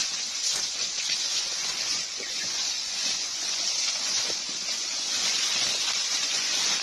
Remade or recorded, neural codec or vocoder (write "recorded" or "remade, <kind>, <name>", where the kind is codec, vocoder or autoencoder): remade, vocoder, Vocos